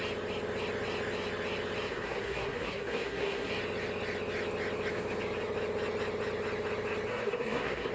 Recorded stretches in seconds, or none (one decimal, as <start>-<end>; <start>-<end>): 0.0-1.9; 3.5-7.1